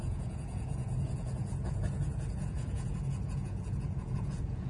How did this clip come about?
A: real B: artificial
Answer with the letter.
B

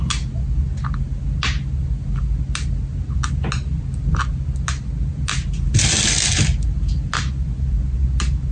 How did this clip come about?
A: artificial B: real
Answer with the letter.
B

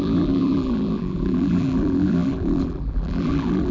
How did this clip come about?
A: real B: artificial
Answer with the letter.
B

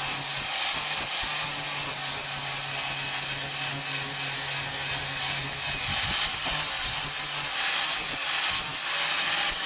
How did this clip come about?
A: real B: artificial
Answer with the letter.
A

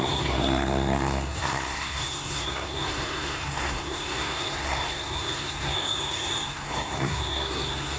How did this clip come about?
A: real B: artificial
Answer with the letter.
B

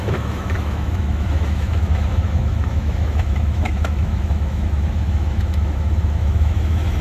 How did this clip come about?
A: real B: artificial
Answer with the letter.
B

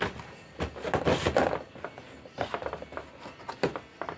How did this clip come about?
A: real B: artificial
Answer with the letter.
A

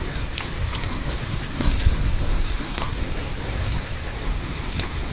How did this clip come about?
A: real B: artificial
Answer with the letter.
B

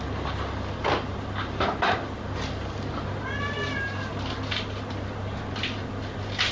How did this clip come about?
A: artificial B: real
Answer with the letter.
B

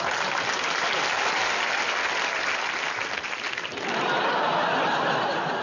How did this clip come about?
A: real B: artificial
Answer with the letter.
A